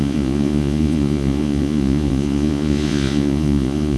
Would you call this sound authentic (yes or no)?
no